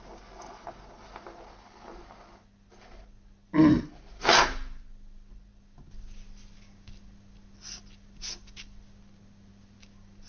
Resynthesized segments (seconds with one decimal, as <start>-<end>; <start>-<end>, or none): none